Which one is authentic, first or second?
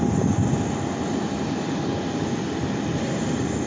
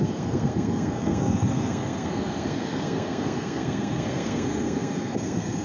first